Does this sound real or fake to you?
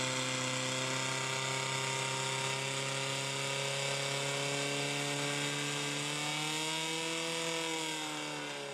real